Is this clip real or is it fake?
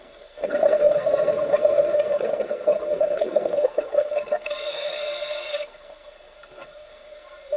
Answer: fake